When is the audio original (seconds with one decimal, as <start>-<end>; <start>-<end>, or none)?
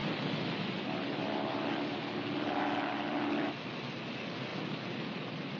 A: 0.0-5.6